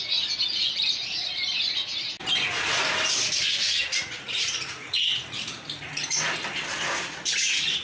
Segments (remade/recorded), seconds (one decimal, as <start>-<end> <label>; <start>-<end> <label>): 0.0-3.6 recorded; 3.6-6.2 remade; 6.2-7.8 recorded